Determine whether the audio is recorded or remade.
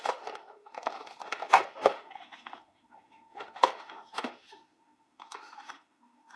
remade